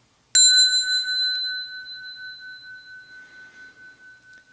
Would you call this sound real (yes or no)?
yes